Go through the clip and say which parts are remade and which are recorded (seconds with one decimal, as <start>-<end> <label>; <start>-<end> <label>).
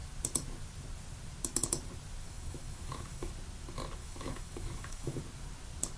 0.0-2.2 recorded; 2.2-3.3 remade; 3.3-4.0 recorded; 4.0-5.2 remade; 5.2-6.0 recorded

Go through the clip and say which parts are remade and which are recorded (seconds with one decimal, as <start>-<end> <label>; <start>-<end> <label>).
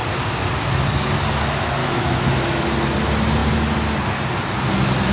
0.0-1.8 recorded; 1.8-2.3 remade; 2.3-5.1 recorded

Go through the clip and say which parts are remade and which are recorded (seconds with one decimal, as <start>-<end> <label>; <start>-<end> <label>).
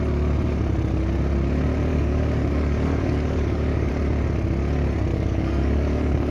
0.0-1.9 recorded; 1.9-3.9 remade; 3.9-5.1 recorded; 5.1-6.3 remade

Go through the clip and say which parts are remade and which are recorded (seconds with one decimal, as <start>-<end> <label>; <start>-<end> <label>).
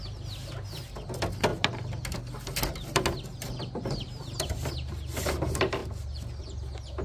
0.0-7.0 recorded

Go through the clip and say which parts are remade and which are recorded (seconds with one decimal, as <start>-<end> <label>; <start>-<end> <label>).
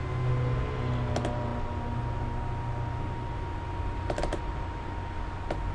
0.0-5.7 recorded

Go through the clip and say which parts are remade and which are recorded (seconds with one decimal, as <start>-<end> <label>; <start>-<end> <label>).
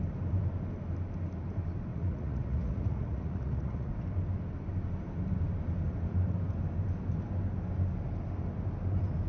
0.0-1.9 recorded; 1.9-3.9 remade; 3.9-9.3 recorded